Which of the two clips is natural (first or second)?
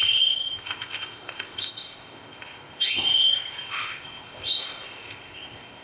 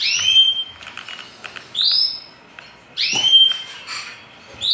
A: second